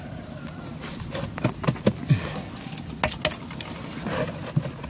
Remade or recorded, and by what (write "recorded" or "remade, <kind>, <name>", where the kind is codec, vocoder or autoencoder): recorded